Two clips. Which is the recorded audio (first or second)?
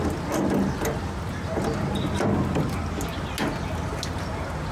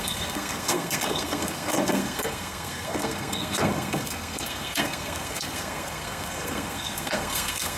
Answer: first